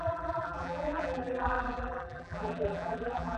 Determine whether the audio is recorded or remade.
remade